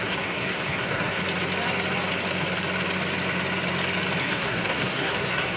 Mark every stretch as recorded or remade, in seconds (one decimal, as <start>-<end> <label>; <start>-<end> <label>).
0.0-1.2 remade; 1.2-4.2 recorded; 4.2-5.6 remade